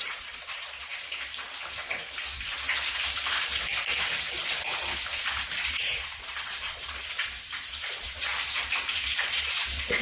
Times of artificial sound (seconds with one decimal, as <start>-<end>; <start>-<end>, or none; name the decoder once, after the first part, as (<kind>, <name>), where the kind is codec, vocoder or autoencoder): 0.0-0.9 (vocoder, Vocos); 5.6-8.3; 9.2-10.0